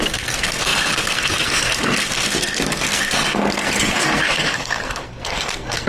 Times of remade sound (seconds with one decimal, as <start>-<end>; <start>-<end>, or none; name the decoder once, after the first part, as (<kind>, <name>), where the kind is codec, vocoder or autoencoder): 0.0-5.9 (codec, SNAC)